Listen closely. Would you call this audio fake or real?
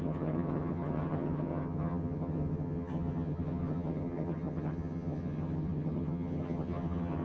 fake